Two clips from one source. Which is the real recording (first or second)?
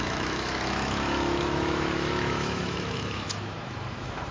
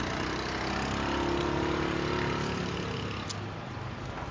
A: second